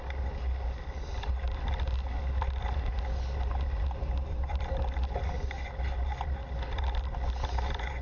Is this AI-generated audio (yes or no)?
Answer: no